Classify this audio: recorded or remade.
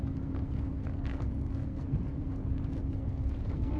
remade